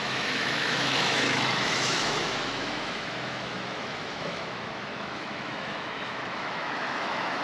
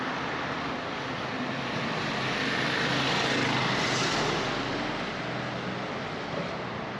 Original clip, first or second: second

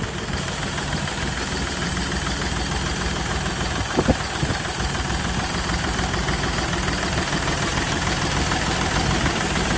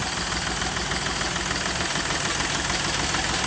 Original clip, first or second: second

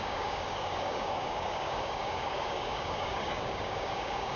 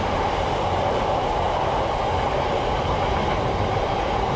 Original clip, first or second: second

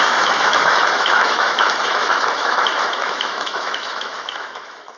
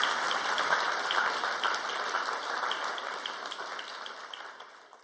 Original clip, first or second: second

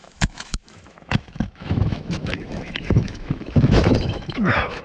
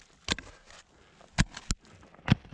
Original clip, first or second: second